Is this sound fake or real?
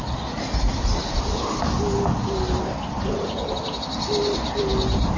real